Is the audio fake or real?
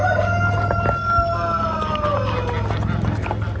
real